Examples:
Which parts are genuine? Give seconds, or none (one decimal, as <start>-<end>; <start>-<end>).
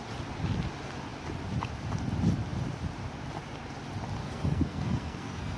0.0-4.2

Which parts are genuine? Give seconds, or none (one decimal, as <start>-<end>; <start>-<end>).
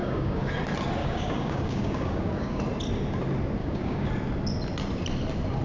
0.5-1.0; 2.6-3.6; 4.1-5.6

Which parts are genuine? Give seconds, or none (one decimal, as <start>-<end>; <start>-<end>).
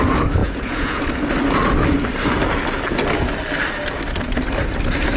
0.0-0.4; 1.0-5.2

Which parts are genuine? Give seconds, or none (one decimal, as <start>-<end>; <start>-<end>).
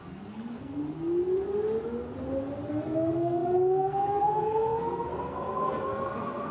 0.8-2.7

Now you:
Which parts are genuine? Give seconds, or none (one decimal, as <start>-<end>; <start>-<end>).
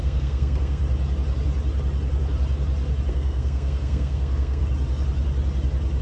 0.8-3.1; 4.6-6.0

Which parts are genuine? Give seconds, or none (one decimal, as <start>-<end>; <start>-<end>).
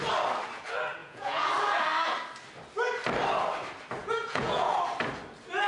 0.0-1.0; 1.5-4.0; 4.7-5.7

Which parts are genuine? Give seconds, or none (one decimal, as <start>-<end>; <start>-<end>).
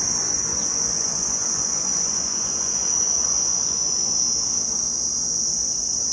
0.0-0.5; 4.2-6.1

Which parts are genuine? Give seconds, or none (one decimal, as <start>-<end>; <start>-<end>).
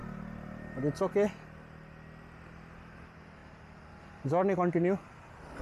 0.0-5.6